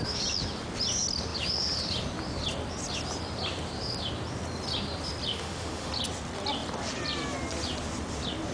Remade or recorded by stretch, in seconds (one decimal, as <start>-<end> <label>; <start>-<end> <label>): 0.0-5.3 recorded; 5.3-5.9 remade; 5.9-8.5 recorded